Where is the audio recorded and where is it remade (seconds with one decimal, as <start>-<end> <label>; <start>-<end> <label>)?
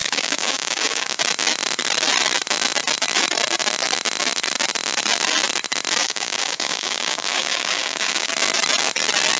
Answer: 0.0-1.2 remade; 1.2-6.0 recorded; 6.0-8.3 remade; 8.3-9.4 recorded